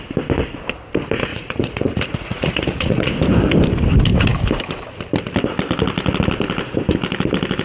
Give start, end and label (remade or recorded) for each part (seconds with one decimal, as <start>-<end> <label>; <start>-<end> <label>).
0.0-1.3 recorded; 1.3-3.1 remade; 3.1-7.6 recorded